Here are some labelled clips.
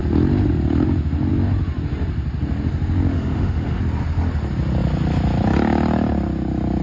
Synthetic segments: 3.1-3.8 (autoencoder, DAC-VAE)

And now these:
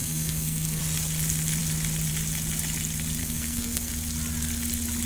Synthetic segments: 0.0-0.8 (codec, SNAC); 3.2-3.9